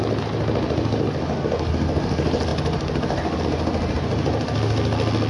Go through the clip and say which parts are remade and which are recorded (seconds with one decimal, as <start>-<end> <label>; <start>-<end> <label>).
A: 0.0-5.3 recorded